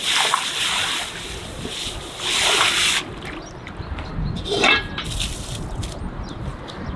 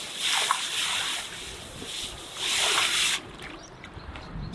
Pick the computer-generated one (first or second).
second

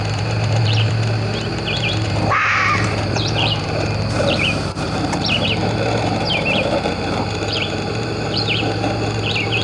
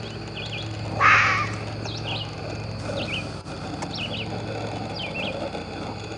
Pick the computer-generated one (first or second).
first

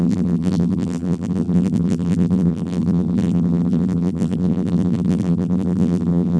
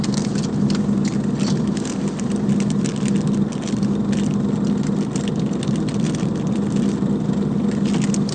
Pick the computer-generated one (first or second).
first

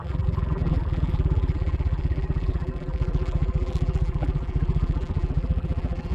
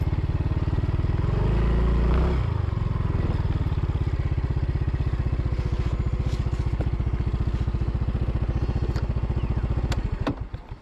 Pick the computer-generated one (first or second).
first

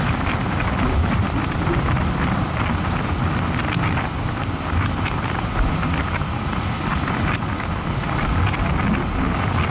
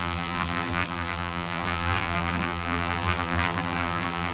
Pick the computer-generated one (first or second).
second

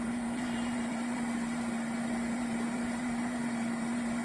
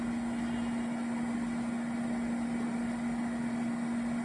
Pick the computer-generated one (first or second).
first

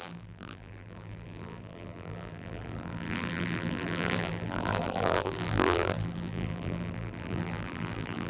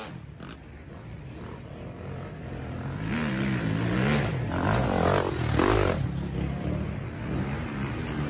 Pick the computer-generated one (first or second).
first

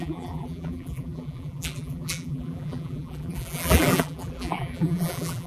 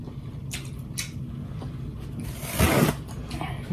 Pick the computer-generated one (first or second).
first